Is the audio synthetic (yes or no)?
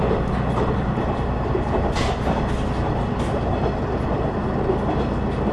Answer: no